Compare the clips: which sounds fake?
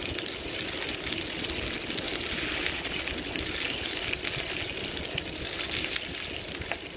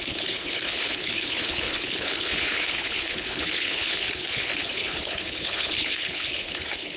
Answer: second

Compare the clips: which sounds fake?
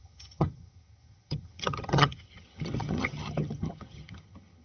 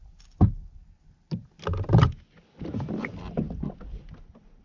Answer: first